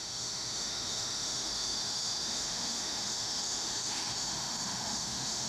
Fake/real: fake